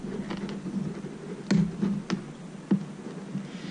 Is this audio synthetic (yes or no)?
no